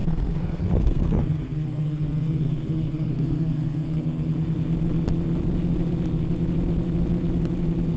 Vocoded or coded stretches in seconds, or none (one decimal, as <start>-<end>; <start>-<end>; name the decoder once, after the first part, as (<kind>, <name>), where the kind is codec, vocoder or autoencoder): 0.0-4.3 (codec, SNAC)